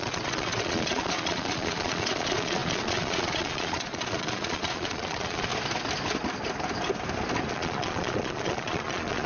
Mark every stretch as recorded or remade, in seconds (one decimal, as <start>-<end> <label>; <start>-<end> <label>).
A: 0.0-5.5 remade; 5.5-7.5 recorded; 7.5-9.3 remade